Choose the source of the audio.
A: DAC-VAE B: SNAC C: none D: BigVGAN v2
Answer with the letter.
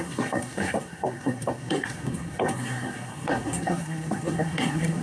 B